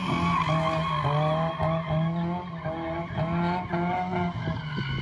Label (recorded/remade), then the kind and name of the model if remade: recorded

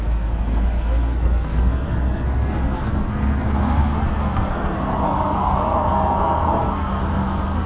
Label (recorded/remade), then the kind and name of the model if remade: remade, codec, SNAC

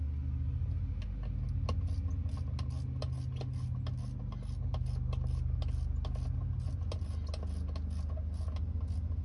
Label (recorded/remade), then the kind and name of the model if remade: recorded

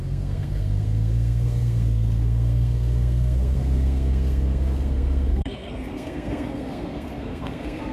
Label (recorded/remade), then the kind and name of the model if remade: remade, codec, SNAC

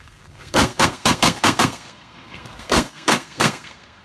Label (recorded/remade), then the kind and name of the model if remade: remade, codec, SNAC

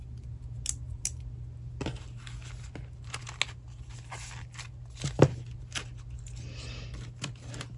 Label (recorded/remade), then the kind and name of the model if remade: recorded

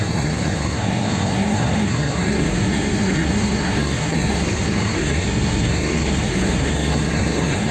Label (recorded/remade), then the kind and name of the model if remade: remade, codec, SNAC